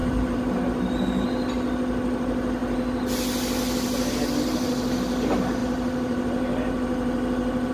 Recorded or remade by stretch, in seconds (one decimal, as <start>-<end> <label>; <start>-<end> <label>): 0.0-0.6 remade; 0.6-5.6 recorded; 5.6-7.7 remade